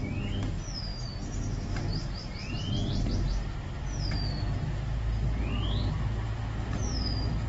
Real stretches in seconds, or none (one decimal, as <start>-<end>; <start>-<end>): 0.0-7.5